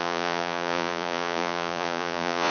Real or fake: fake